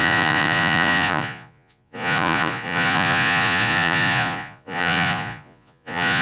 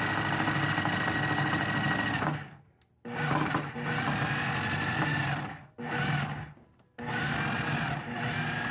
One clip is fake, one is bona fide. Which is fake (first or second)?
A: first